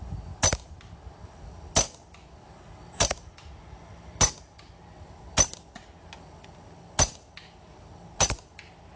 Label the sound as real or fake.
real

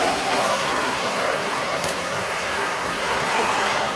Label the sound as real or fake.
fake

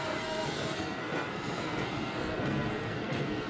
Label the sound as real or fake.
fake